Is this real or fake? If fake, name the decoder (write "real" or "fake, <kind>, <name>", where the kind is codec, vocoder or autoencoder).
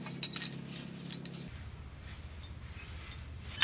real